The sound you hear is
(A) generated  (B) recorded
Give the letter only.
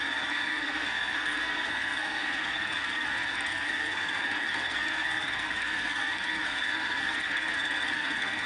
A